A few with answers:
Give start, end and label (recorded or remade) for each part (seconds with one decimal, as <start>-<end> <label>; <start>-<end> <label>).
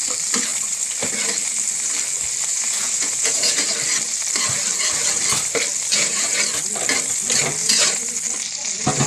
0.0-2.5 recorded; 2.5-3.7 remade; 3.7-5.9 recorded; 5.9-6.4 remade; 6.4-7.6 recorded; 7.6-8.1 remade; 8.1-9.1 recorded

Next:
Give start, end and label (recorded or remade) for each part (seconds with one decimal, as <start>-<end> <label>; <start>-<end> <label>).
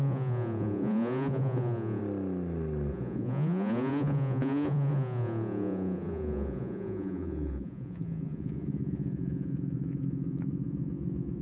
0.0-2.0 remade; 2.0-2.9 recorded; 2.9-11.4 remade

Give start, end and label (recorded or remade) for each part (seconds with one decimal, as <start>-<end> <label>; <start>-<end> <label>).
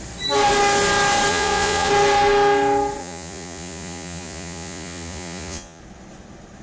0.0-1.3 recorded; 1.3-1.9 remade; 1.9-3.0 recorded; 3.0-5.8 remade; 5.8-6.6 recorded